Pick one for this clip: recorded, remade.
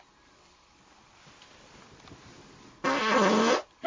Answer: recorded